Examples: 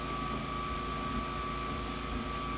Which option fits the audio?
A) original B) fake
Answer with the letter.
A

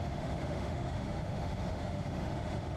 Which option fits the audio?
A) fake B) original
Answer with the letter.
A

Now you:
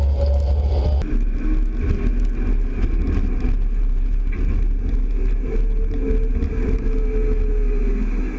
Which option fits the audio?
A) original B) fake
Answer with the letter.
A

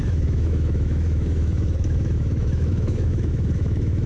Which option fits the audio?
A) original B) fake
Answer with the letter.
B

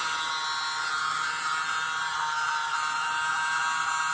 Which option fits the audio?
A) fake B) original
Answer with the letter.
B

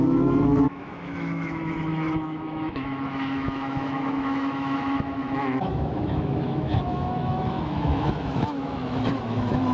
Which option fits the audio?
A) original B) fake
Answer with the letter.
B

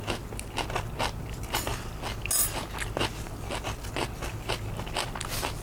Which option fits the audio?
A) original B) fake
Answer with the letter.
A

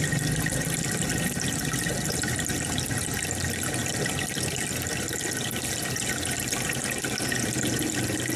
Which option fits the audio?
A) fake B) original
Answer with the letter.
B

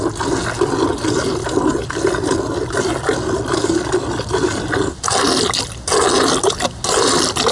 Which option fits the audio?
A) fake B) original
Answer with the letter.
B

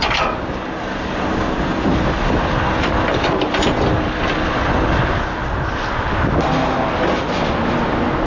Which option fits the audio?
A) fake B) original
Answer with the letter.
B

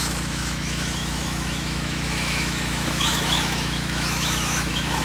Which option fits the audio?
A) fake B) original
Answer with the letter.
A